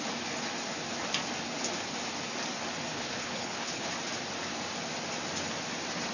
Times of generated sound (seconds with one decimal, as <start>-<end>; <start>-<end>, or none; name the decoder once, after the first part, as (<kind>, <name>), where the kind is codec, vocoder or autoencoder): 2.9-3.9 (codec, HILCodec)